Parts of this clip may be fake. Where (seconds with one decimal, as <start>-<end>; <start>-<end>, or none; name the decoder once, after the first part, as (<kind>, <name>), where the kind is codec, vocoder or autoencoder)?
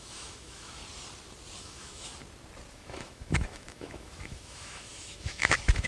0.0-0.8 (autoencoder, DAC-VAE); 1.6-2.1; 2.7-5.9